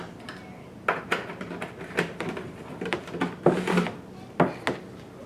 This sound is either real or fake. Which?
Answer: real